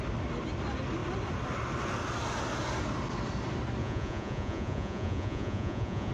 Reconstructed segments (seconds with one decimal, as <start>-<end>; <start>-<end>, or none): 3.8-6.1